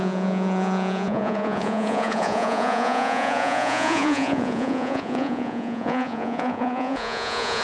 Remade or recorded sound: remade